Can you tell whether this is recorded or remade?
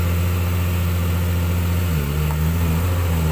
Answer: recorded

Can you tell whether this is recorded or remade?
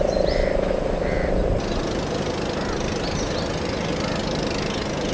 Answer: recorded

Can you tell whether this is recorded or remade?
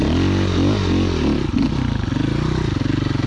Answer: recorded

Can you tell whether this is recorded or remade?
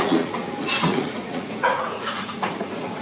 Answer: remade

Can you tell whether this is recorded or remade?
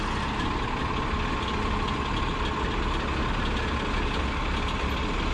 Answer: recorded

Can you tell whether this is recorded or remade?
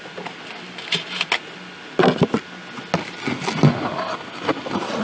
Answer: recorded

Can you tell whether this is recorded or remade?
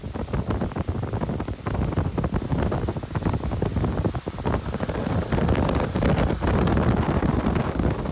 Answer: recorded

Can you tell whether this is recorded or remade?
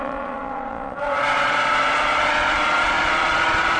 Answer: remade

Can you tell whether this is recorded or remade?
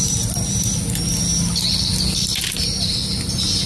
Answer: recorded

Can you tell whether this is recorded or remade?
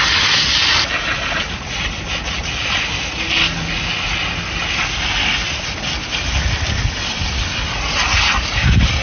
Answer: recorded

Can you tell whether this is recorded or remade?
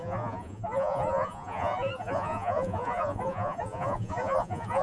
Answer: remade